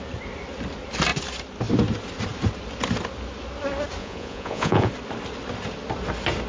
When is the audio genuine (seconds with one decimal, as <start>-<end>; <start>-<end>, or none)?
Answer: 0.0-4.0; 4.9-6.5